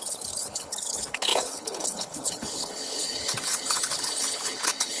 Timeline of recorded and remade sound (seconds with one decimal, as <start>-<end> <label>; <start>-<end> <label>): 0.0-5.0 remade